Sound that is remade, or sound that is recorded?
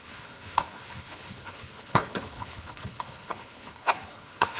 remade